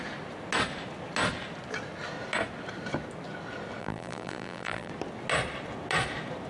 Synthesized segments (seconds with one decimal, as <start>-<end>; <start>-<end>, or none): 3.8-4.9